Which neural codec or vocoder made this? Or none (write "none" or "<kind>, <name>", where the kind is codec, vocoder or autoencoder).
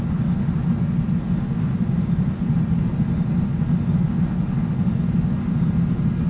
none